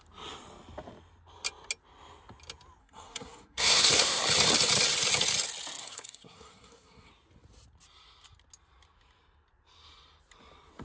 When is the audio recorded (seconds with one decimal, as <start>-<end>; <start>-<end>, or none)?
0.0-2.8; 4.2-5.8; 7.1-10.8